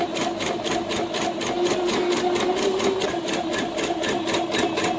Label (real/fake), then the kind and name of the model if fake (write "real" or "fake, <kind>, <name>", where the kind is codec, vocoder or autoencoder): real